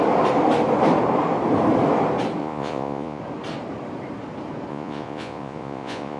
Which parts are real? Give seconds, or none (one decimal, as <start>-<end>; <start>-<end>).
0.0-2.4; 3.2-4.7